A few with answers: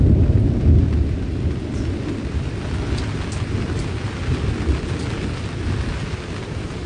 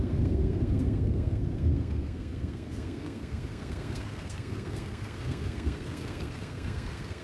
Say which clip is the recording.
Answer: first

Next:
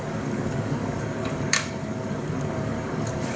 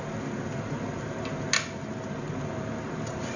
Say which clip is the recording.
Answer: second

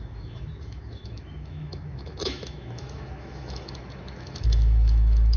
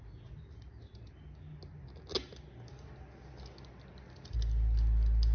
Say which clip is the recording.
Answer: second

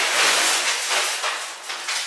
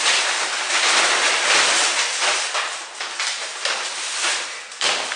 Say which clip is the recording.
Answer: second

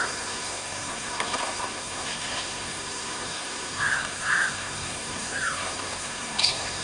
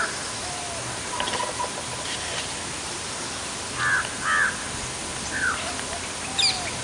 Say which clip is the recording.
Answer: second